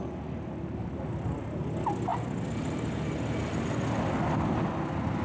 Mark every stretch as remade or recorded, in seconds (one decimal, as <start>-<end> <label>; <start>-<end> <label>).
0.0-5.2 recorded